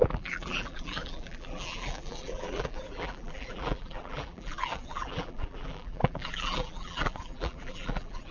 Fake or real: fake